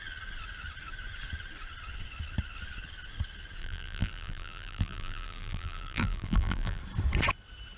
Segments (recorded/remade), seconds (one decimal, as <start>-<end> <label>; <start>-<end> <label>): 0.0-3.6 recorded; 3.6-6.8 remade; 6.8-7.8 recorded